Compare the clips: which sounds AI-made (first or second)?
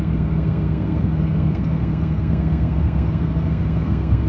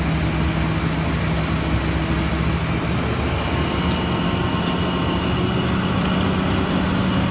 first